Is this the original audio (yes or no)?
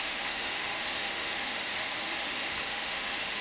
no